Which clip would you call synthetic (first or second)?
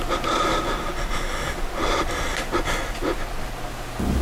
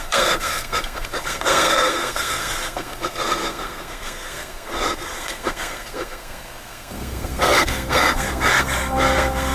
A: second